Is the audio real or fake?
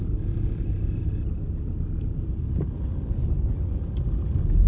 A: real